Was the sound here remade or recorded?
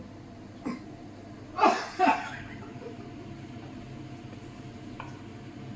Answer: recorded